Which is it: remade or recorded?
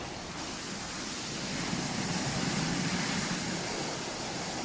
recorded